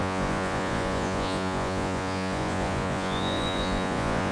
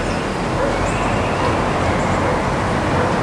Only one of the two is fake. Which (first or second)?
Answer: first